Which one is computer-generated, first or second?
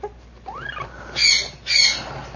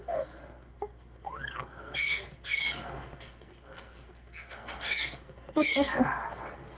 second